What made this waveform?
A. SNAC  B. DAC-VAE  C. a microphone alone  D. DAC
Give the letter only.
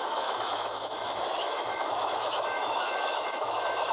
B